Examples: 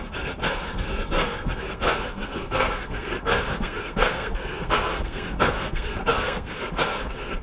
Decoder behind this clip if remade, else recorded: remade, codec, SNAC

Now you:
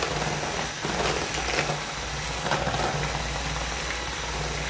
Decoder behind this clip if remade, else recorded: recorded